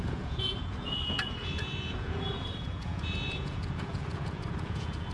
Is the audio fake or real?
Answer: fake